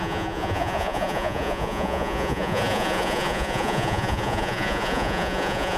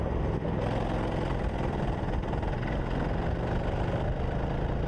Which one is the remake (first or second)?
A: first